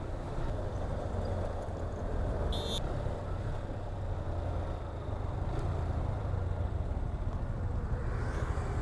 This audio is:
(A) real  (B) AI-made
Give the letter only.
A